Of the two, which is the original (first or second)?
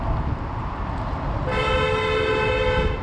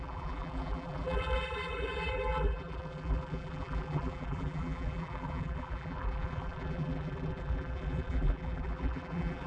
first